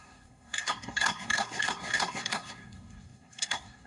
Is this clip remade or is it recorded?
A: remade